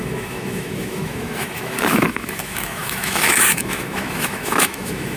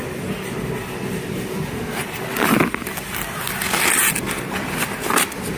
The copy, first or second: first